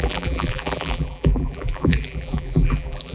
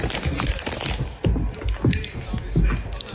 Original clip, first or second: second